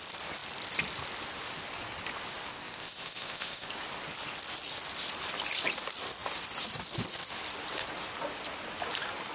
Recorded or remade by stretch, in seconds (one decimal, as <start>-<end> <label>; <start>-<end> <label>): 0.0-2.5 recorded; 2.5-3.7 remade; 3.7-9.3 recorded